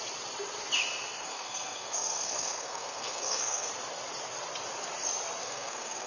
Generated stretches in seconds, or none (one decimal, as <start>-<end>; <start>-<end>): 1.3-3.7; 5.4-6.1